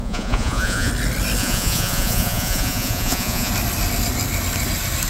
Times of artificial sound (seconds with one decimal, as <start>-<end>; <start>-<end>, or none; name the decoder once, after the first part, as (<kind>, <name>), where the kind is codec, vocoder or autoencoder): 0.0-0.9 (vocoder, Vocos); 1.4-3.5